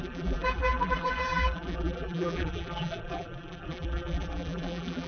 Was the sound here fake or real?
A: fake